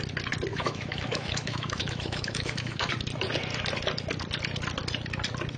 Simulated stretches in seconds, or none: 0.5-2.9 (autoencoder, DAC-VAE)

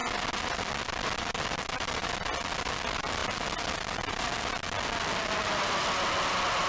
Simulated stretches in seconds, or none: none

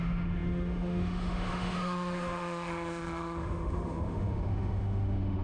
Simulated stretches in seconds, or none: 0.0-5.4 (autoencoder, DAC-VAE)